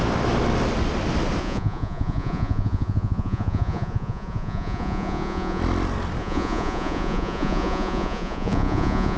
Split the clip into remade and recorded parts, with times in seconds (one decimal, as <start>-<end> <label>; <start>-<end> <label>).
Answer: 0.0-1.4 recorded; 1.4-5.6 remade; 5.6-6.2 recorded; 6.2-9.2 remade